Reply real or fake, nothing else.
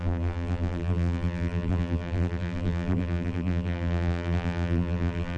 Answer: fake